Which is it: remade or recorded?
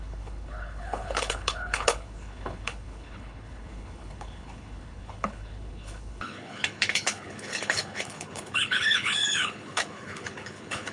remade